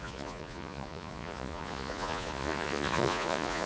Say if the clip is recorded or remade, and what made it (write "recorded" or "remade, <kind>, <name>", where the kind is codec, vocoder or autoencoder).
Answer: remade, vocoder, Vocos